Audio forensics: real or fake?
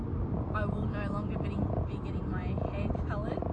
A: fake